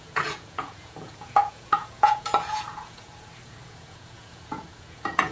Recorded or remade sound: remade